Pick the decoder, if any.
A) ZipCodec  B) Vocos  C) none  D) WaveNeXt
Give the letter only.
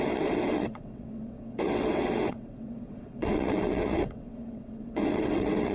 D